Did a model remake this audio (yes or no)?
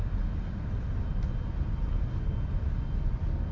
no